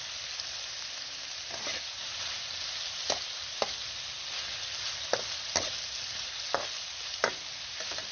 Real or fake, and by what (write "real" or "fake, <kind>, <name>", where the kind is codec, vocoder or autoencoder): real